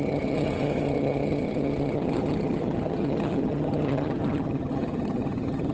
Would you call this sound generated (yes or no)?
yes